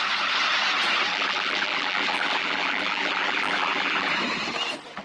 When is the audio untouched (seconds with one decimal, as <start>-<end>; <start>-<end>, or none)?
0.0-1.1; 4.1-5.0